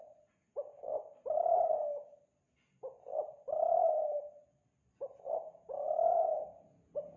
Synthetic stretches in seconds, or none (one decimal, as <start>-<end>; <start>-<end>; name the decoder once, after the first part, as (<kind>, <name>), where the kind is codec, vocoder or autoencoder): 0.0-0.9 (vocoder, Vocos); 5.2-7.2